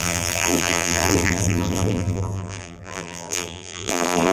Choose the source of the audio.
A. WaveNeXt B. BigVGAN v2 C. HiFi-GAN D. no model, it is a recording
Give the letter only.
B